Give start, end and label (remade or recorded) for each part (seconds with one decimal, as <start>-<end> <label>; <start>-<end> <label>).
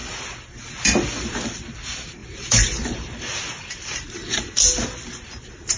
0.0-2.2 recorded; 2.2-5.8 remade